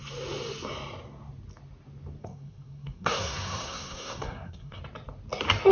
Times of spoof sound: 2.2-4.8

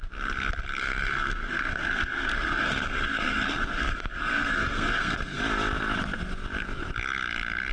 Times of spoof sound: 0.8-5.4

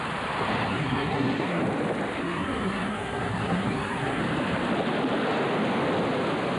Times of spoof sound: 0.7-1.6; 2.2-4.2

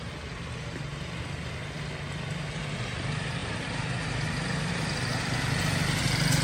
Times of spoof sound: none